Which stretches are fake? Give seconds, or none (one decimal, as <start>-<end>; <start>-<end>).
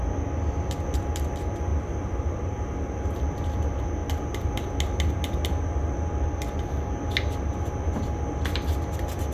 1.7-3.3